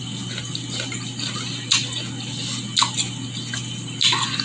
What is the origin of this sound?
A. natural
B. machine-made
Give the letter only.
A